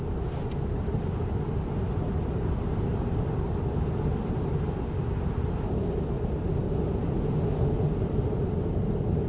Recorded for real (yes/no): yes